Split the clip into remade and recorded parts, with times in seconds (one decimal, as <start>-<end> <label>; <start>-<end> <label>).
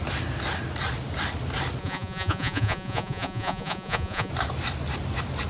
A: 0.0-1.8 recorded; 1.8-4.3 remade; 4.3-5.5 recorded